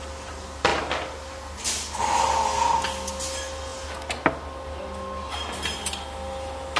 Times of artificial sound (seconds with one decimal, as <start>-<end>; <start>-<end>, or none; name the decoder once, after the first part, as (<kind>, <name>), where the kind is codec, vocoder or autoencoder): none